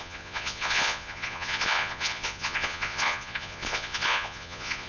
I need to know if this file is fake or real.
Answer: fake